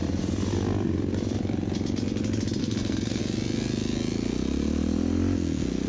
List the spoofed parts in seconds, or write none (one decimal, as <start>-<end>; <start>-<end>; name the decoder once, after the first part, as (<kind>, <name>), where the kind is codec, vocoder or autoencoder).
2.6-3.2 (codec, SNAC)